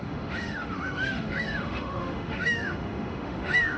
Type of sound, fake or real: fake